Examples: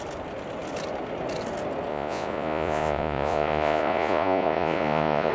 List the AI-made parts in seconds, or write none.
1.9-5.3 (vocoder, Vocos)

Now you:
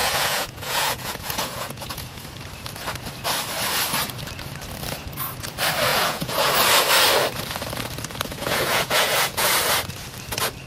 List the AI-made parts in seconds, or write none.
0.0-2.2 (vocoder, Vocos); 5.9-6.5; 8.3-9.5

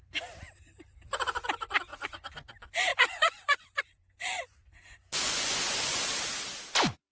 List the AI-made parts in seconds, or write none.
1.9-2.5 (vocoder, Vocos); 2.9-6.0